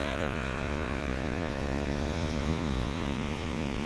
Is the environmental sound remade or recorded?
remade